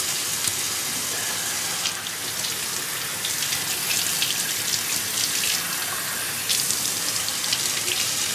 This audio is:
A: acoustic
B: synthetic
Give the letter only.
A